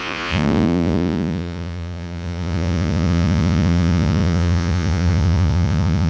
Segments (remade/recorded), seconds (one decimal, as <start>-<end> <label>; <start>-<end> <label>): 0.0-6.1 remade